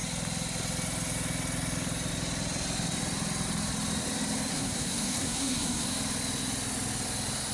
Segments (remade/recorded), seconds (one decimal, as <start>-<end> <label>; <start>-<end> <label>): 0.0-4.5 recorded; 4.5-5.9 remade; 5.9-7.5 recorded